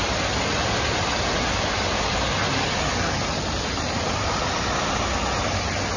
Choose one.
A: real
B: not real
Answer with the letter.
A